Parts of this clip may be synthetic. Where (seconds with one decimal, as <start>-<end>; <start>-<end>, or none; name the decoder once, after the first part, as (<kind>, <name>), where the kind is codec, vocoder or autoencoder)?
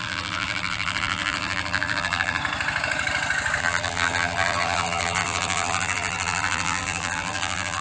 0.0-2.4 (vocoder, BigVGAN v2); 3.6-7.8